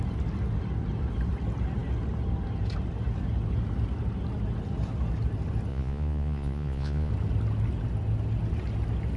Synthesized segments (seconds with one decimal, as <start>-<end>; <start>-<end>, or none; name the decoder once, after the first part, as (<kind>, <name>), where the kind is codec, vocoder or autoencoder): 5.7-7.1 (vocoder, Vocos)